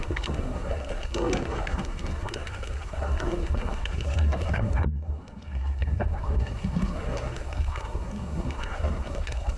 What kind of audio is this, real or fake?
fake